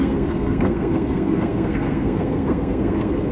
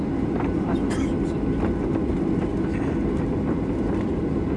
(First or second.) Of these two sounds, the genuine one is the second